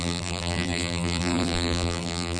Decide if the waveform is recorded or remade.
remade